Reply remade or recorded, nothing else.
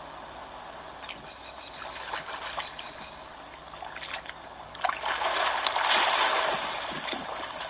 recorded